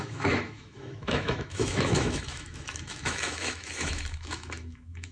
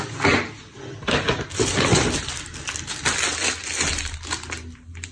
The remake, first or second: first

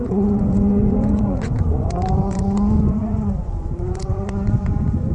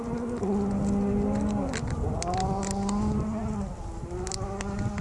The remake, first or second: first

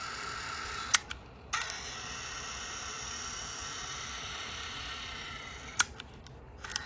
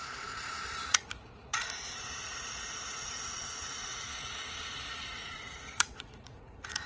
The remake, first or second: second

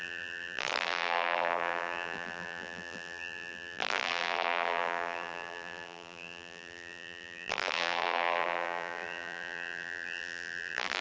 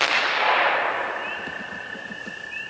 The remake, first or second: first